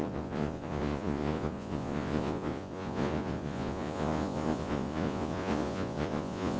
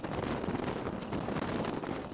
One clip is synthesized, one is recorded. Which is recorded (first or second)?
second